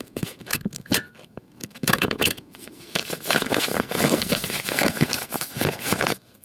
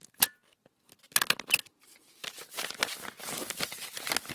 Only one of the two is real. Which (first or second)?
second